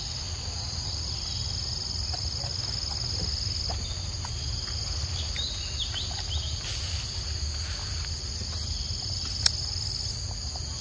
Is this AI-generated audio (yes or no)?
no